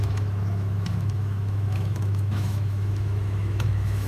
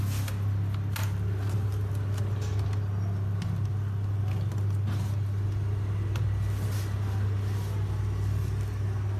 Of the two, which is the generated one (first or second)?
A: first